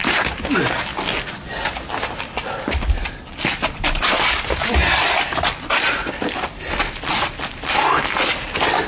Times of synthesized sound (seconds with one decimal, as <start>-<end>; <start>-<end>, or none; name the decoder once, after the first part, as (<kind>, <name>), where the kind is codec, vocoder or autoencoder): none